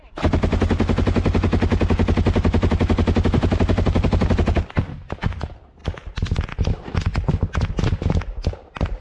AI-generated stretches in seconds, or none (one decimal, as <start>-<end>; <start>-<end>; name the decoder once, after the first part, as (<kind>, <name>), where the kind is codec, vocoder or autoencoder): none